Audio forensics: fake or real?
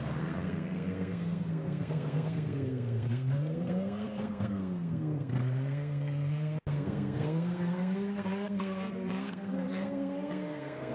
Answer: fake